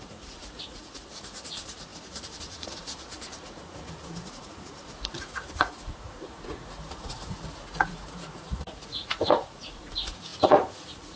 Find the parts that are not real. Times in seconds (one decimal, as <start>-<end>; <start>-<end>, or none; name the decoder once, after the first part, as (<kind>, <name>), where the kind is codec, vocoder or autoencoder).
0.0-11.2 (vocoder, Vocos)